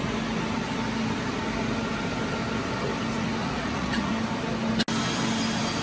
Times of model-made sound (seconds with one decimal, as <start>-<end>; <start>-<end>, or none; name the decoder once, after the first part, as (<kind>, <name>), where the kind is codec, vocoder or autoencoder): 3.4-4.1 (vocoder, Vocos)